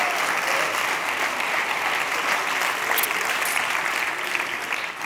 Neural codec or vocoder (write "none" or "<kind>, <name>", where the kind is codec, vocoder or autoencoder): none